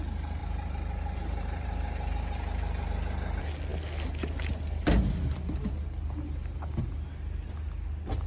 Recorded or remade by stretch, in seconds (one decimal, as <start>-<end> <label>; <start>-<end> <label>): 0.0-0.4 recorded; 0.4-2.8 remade; 2.8-8.3 recorded

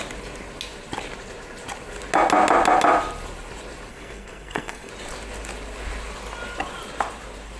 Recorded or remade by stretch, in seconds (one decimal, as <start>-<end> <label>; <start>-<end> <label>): 0.0-3.9 recorded; 3.9-4.9 remade; 4.9-7.6 recorded

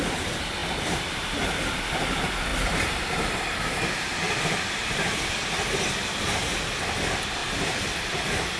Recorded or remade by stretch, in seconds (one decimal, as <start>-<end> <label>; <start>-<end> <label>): 0.0-0.6 recorded; 0.6-1.9 remade; 1.9-2.5 recorded; 2.5-3.4 remade; 3.4-4.1 recorded; 4.1-5.4 remade; 5.4-7.4 recorded; 7.4-8.2 remade; 8.2-8.6 recorded

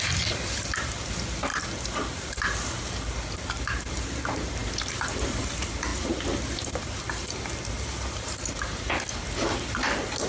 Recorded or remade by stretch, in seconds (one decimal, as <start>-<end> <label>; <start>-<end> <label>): 0.0-1.5 recorded; 1.5-2.3 remade; 2.3-5.9 recorded; 5.9-6.8 remade; 6.8-10.3 recorded

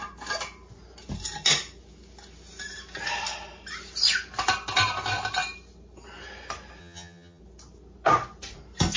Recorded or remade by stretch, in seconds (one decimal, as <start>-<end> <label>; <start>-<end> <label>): 0.0-6.8 recorded; 6.8-7.4 remade; 7.4-9.0 recorded

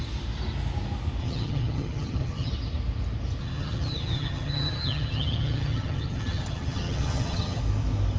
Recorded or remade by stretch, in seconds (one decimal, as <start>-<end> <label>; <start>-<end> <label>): 0.0-1.2 recorded; 1.2-2.5 remade; 2.5-3.4 recorded; 3.4-7.6 remade; 7.6-8.2 recorded